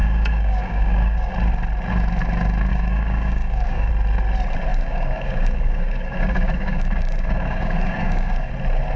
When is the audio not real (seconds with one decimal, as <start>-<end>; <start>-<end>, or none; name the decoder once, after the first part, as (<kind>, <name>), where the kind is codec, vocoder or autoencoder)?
0.0-1.3 (codec, DAC); 2.7-3.9; 4.7-8.5